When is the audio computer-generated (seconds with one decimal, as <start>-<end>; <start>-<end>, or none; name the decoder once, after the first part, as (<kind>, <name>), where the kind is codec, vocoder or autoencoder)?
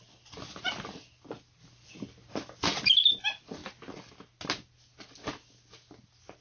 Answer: none